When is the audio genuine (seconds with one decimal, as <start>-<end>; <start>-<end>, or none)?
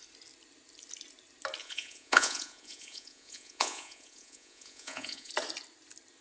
0.0-1.6; 5.3-6.2